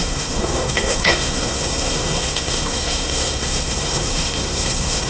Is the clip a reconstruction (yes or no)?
yes